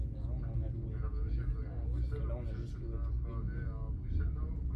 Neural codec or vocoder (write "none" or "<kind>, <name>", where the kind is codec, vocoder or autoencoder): none